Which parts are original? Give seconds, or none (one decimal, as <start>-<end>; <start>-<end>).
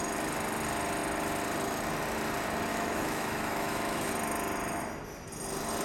0.0-2.7; 4.1-5.8